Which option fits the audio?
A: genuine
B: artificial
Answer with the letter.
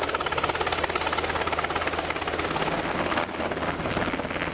A